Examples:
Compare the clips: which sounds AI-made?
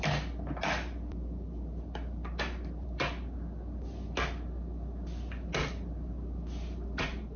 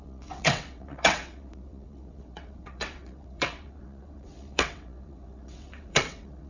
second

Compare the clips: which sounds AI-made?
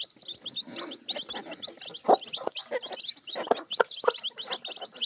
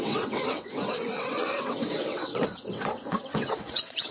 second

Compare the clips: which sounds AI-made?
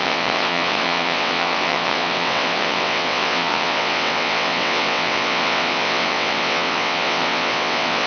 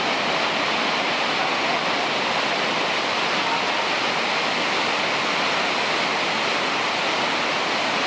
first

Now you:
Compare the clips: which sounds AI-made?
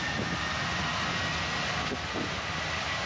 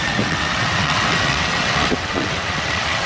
second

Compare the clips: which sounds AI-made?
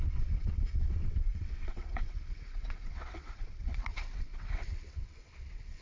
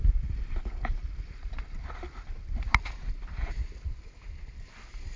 first